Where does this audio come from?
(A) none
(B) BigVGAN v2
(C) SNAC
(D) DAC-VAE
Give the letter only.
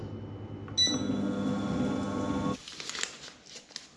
A